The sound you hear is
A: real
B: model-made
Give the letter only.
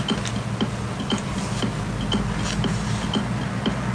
A